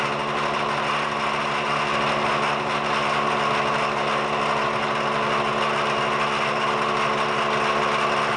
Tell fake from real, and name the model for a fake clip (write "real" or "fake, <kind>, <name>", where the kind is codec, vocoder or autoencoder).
real